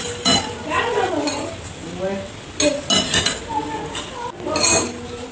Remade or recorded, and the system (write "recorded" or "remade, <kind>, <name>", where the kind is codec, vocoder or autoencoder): recorded